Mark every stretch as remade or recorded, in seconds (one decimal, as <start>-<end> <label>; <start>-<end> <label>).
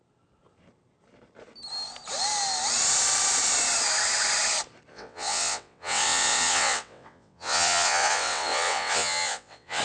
0.0-4.9 recorded; 4.9-9.8 remade